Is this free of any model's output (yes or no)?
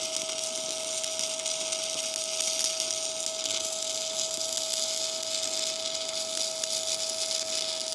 yes